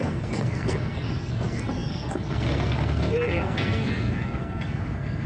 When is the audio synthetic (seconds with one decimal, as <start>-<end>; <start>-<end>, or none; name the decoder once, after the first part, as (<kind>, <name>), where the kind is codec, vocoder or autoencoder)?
0.0-5.3 (codec, SNAC)